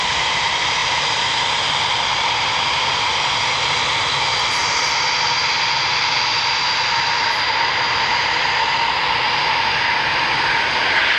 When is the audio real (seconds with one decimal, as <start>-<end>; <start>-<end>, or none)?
0.0-0.8; 2.6-11.2